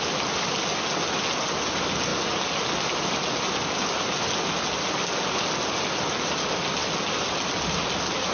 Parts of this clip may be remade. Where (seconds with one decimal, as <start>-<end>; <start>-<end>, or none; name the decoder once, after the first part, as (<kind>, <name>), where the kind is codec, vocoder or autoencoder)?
none